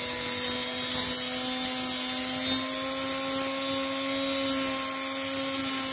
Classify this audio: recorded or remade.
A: recorded